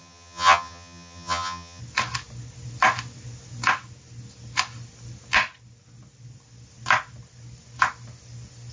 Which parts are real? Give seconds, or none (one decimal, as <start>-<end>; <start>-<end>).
1.8-8.7